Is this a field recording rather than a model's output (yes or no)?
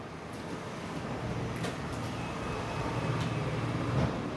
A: yes